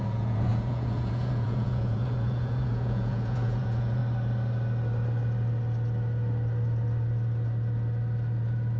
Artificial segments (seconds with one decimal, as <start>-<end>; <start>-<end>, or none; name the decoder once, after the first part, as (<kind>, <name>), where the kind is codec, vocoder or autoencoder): 0.0-4.0 (vocoder, Vocos)